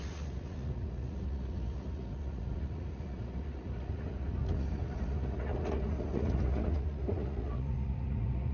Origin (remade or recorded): remade